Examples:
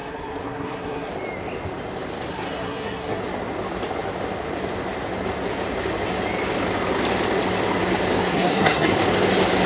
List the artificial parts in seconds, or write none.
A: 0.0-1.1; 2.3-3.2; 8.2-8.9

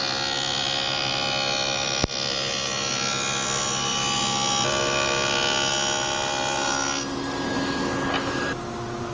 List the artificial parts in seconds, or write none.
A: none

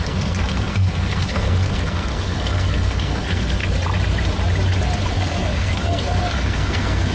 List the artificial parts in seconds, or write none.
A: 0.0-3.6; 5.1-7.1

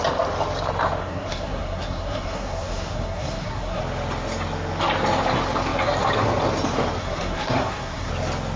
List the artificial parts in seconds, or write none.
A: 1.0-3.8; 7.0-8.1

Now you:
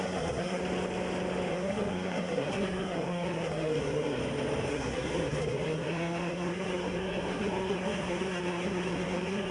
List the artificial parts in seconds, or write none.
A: 0.0-0.6; 1.5-4.2; 4.7-9.5